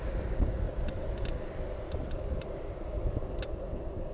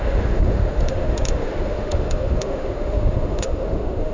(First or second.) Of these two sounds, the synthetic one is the second